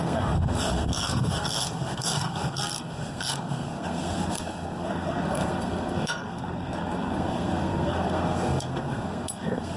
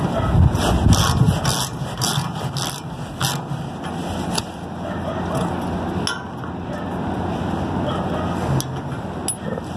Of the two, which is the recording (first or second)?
second